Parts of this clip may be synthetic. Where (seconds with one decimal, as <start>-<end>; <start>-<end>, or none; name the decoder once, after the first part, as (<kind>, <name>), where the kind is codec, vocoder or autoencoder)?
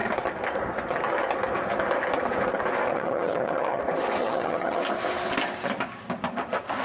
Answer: 2.9-3.8 (vocoder, HiFi-GAN); 4.2-4.8